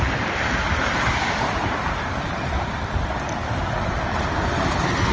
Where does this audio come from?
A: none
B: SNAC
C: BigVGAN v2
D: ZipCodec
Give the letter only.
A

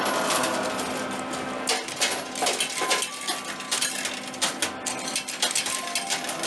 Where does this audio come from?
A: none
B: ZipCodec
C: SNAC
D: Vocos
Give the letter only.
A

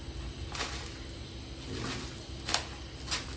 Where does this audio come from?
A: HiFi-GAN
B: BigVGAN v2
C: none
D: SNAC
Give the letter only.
C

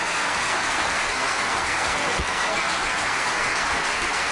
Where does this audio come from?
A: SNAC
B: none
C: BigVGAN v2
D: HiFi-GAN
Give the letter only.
A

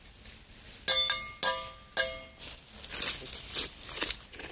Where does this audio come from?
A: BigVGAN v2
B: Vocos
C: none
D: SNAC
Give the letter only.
C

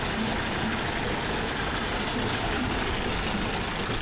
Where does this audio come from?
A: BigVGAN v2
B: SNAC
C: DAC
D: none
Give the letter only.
D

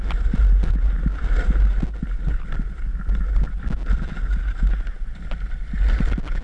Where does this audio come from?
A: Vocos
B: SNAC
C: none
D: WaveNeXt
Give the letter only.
C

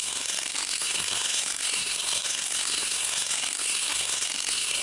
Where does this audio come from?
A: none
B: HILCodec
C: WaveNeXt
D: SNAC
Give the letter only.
D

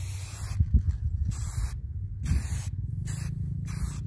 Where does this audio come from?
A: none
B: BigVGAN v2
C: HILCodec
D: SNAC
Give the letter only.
A